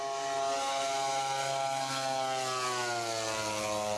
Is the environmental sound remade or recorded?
recorded